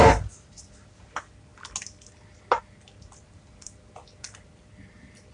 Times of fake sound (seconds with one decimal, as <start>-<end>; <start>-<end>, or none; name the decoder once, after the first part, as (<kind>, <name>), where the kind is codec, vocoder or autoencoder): none